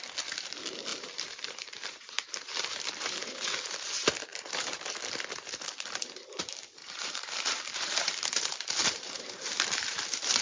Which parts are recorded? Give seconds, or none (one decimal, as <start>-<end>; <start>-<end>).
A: 0.0-0.9; 2.8-4.3; 4.9-6.8